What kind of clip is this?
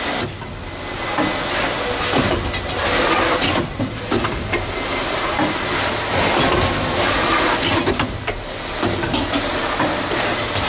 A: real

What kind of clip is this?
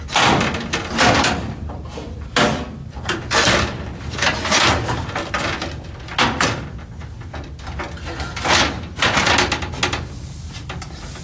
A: real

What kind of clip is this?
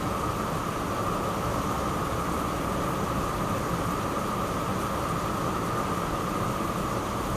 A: fake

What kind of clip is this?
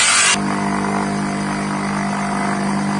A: real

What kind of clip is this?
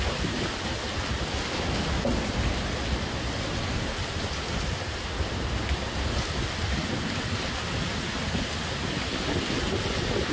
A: real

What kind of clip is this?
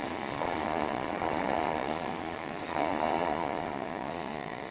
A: fake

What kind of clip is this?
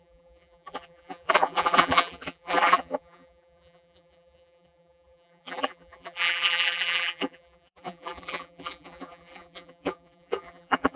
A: fake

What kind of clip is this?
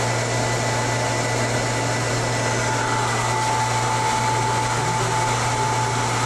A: real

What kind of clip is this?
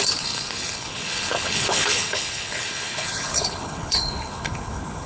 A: fake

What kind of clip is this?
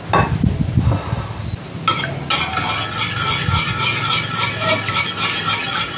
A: real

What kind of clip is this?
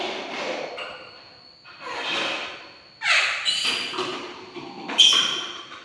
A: real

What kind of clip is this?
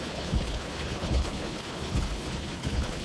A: fake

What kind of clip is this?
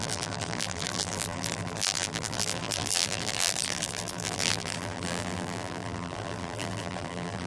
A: fake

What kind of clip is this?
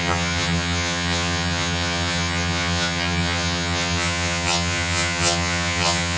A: fake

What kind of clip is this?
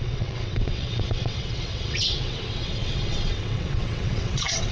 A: fake